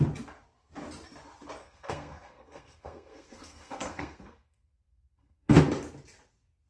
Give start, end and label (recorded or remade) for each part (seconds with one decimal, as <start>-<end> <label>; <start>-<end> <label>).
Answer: 0.0-1.6 recorded; 1.6-5.6 remade; 5.6-6.7 recorded